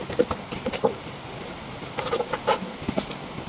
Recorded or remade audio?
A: recorded